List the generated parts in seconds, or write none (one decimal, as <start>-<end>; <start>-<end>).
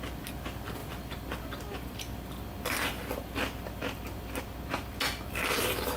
0.8-4.4